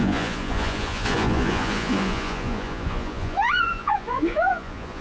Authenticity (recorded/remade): remade